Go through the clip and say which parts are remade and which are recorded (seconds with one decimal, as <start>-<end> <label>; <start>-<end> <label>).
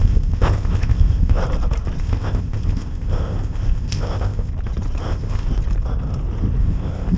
0.0-1.4 remade; 1.4-2.0 recorded; 2.0-4.5 remade; 4.5-5.0 recorded; 5.0-5.5 remade; 5.5-6.6 recorded; 6.6-7.2 remade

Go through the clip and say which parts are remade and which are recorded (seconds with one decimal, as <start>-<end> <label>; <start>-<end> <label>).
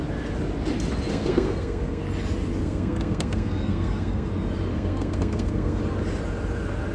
0.0-1.1 recorded; 1.1-2.0 remade; 2.0-2.6 recorded; 2.6-4.3 remade; 4.3-4.7 recorded; 4.7-5.8 remade; 5.8-6.9 recorded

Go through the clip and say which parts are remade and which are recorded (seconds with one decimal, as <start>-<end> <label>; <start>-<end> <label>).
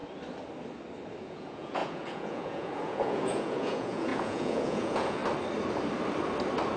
0.0-1.2 recorded; 1.2-5.2 remade; 5.2-6.8 recorded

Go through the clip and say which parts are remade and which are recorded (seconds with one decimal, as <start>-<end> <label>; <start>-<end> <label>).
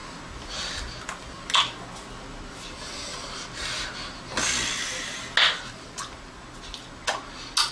0.0-7.7 recorded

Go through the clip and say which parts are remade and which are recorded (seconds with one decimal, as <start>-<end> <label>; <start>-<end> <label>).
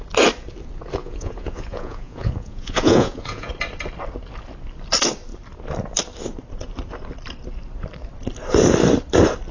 0.0-1.0 recorded; 1.0-3.5 remade; 3.5-9.5 recorded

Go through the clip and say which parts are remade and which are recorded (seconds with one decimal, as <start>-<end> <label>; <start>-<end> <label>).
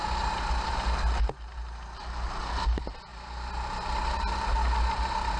0.0-5.4 recorded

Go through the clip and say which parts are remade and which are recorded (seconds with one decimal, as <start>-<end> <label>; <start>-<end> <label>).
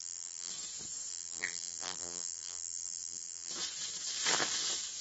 0.0-0.5 remade; 0.5-1.1 recorded; 1.1-3.5 remade; 3.5-5.0 recorded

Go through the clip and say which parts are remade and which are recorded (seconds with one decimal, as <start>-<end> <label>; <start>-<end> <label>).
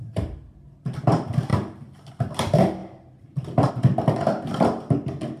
0.0-5.4 recorded